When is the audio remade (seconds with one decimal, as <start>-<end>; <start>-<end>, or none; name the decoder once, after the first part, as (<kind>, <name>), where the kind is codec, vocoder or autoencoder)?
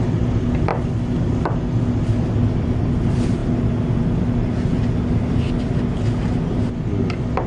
none